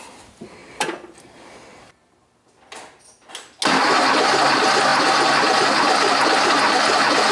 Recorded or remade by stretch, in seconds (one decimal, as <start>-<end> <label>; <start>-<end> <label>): 0.0-7.3 recorded